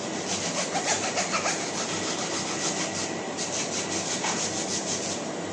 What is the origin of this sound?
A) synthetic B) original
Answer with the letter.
B